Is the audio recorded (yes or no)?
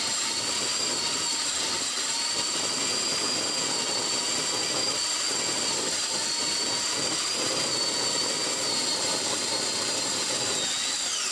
yes